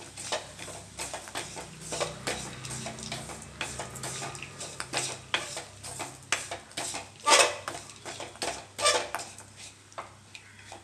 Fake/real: real